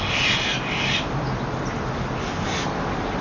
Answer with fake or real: real